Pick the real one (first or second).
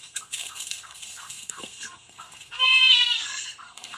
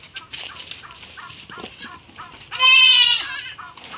second